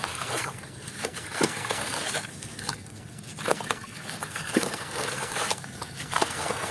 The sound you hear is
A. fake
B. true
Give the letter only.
A